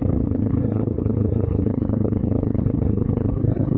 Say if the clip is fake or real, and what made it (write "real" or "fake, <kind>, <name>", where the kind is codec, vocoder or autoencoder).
fake, codec, SNAC